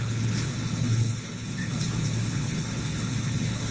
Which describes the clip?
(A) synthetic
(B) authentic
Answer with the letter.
A